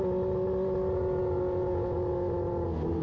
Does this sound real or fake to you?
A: real